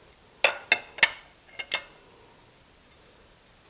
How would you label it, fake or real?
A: real